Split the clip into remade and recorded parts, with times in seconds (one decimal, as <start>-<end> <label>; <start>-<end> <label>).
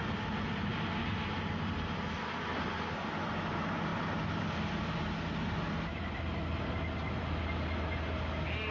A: 0.0-8.7 recorded